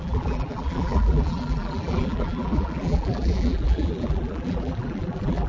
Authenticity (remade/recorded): remade